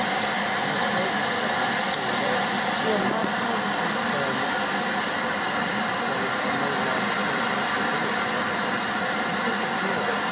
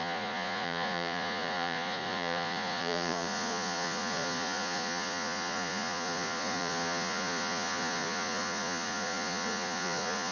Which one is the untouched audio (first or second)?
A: first